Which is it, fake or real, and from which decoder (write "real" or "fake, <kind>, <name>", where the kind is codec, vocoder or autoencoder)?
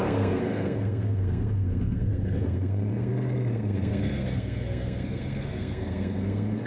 fake, codec, SNAC